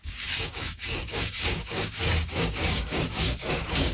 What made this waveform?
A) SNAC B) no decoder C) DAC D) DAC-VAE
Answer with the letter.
C